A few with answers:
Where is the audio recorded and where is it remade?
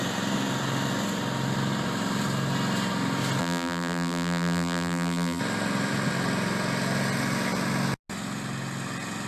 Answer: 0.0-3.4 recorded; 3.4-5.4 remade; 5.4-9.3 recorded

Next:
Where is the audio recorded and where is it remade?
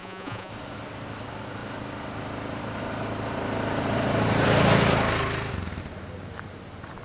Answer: 0.0-0.5 remade; 0.5-7.0 recorded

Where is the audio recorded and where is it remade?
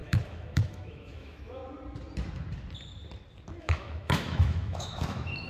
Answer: 0.0-1.6 remade; 1.6-3.6 recorded; 3.6-5.5 remade